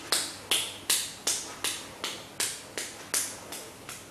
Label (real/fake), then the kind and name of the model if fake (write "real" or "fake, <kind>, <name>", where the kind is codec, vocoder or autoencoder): real